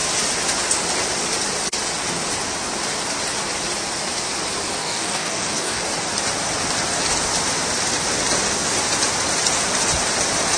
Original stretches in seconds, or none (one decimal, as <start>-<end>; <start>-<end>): 0.0-4.8; 5.8-10.6